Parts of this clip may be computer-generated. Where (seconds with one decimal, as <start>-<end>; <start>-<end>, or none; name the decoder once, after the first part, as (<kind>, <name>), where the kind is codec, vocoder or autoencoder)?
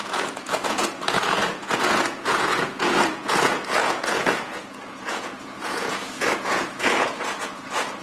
0.0-8.0 (vocoder, Vocos)